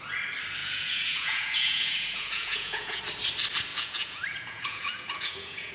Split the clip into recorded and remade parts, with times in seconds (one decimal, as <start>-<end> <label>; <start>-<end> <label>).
0.0-0.6 recorded; 0.6-3.0 remade; 3.0-3.7 recorded; 3.7-5.7 remade